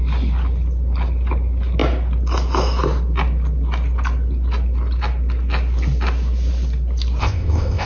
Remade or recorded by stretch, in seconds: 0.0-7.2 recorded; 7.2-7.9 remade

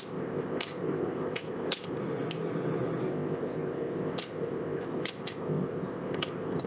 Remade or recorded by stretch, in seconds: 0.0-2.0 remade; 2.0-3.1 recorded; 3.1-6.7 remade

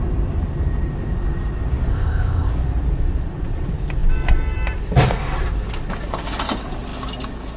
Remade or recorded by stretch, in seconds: 0.0-1.9 recorded; 1.9-2.5 remade; 2.5-7.6 recorded

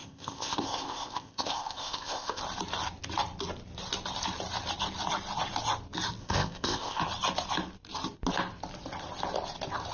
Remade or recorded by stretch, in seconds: 0.0-2.4 remade; 2.4-6.2 recorded; 6.2-7.0 remade; 7.0-9.9 recorded